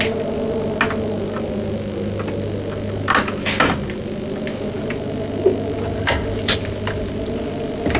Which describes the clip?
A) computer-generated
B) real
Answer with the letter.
B